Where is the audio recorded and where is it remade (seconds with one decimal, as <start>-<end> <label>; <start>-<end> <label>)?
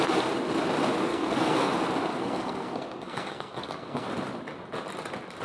0.0-1.1 recorded; 1.1-1.7 remade; 1.7-2.1 recorded; 2.1-4.1 remade; 4.1-5.4 recorded